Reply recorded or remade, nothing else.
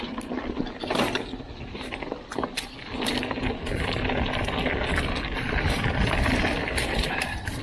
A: recorded